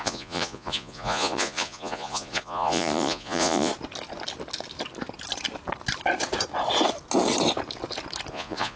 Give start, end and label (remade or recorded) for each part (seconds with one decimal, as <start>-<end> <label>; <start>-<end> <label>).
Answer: 0.0-3.7 remade; 3.7-8.3 recorded; 8.3-8.8 remade